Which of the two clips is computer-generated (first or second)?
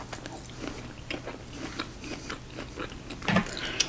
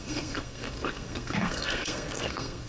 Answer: second